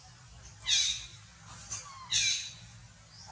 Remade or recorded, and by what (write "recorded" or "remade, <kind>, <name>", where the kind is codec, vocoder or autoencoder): recorded